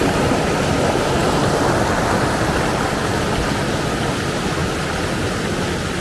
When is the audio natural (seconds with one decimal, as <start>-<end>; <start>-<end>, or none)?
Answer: 0.0-6.0